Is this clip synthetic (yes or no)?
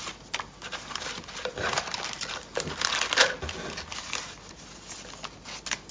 no